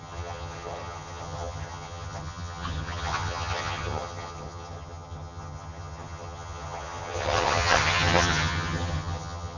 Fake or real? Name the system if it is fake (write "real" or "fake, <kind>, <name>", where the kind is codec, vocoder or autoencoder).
fake, vocoder, HiFi-GAN